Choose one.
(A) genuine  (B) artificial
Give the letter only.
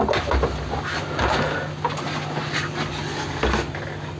A